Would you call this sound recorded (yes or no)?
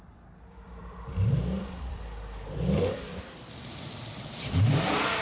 no